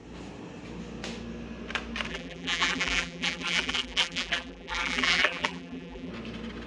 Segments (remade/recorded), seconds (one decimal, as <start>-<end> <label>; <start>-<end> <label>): 0.0-2.1 recorded; 2.1-6.1 remade; 6.1-6.7 recorded